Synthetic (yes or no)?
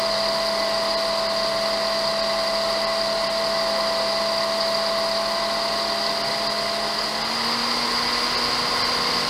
no